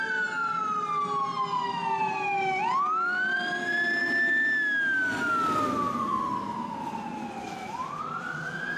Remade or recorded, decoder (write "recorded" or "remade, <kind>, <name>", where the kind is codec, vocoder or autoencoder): recorded